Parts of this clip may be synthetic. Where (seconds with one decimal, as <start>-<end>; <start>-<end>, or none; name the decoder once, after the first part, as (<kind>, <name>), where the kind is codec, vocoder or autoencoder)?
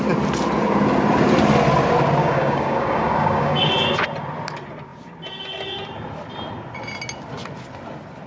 2.2-3.7 (codec, DAC)